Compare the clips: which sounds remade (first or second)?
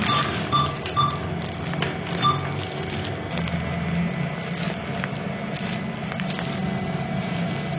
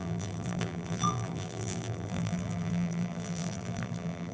second